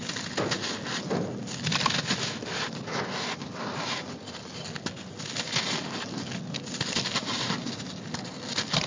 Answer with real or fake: real